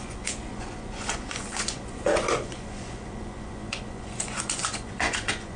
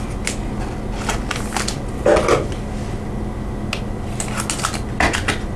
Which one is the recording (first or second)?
second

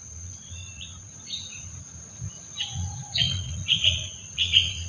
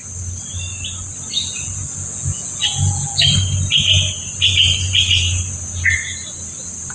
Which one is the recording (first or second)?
second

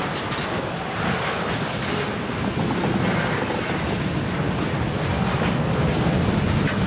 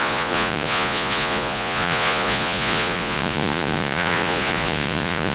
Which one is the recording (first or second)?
first